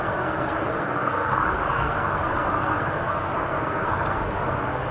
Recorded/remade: remade